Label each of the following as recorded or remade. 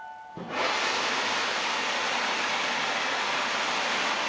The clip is recorded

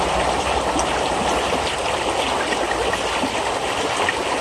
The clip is recorded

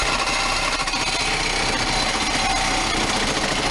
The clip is recorded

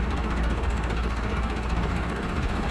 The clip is remade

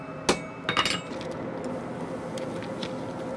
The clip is recorded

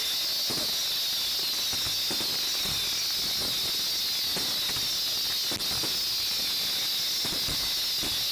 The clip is recorded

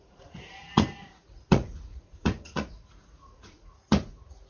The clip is remade